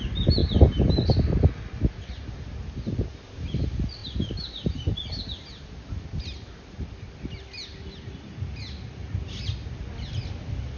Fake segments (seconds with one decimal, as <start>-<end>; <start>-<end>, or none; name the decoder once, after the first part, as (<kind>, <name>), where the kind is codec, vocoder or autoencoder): none